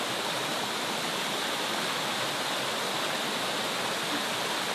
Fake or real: real